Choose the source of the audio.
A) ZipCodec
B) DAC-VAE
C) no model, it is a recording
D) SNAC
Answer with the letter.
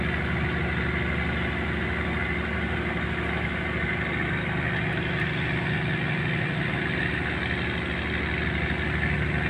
C